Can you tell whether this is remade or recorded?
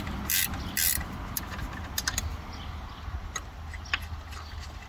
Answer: recorded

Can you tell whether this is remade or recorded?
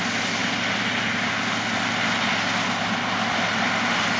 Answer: recorded